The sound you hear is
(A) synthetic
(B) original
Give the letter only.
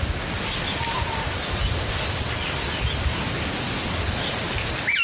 B